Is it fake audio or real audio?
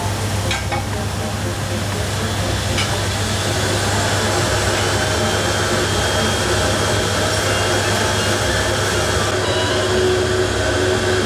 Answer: real